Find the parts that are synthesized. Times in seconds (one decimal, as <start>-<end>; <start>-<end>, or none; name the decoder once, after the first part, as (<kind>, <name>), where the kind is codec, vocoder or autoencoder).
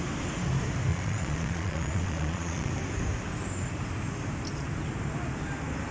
0.9-2.7 (vocoder, Vocos)